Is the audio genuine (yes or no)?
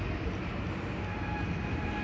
yes